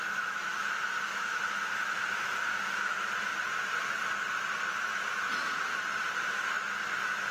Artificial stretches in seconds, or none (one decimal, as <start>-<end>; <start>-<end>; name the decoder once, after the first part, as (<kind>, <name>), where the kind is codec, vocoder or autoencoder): 0.0-3.3 (autoencoder, DAC-VAE); 4.6-5.7; 6.3-7.3